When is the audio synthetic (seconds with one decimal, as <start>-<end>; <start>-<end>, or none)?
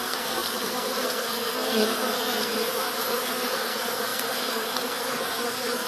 0.0-5.9